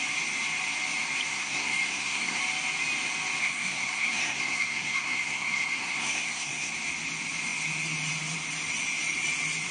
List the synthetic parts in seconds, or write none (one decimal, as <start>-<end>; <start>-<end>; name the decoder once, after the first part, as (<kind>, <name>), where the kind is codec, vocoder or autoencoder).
1.3-2.4 (codec, SNAC); 3.4-6.7